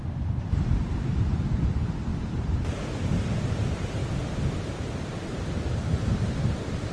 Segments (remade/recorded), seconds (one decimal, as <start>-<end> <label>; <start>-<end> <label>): 0.0-2.1 remade; 2.1-3.3 recorded; 3.3-4.0 remade; 4.0-5.0 recorded; 5.0-6.9 remade